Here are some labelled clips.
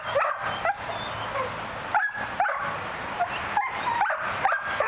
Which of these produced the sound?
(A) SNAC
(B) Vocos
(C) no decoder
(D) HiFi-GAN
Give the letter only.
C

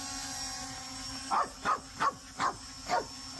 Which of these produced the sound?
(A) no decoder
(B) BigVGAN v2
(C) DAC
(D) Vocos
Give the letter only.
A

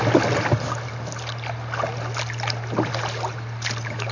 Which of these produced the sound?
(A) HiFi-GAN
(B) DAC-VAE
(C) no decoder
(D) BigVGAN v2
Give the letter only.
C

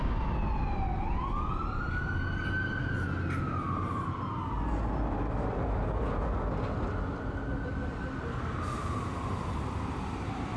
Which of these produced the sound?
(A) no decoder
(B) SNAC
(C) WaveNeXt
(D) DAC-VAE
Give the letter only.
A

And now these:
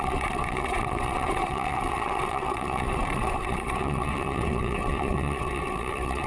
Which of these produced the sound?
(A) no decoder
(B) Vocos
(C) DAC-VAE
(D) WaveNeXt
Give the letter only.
D